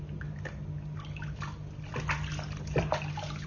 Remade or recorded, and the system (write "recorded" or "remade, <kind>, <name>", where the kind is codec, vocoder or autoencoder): recorded